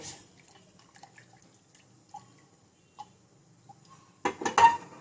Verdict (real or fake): real